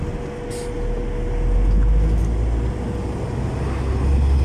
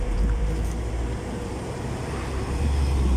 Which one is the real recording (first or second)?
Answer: first